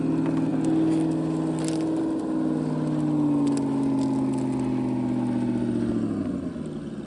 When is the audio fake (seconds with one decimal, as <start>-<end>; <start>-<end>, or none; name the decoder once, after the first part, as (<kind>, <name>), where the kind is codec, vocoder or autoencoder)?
none